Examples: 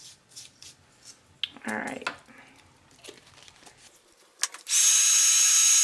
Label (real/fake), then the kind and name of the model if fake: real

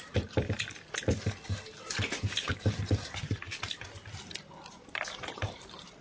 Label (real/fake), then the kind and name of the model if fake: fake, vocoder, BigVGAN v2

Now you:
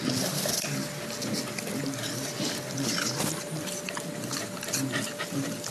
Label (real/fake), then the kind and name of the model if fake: real